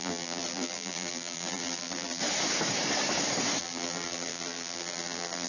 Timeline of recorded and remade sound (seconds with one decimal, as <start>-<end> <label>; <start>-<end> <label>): 0.0-2.2 remade; 2.2-3.6 recorded; 3.6-5.5 remade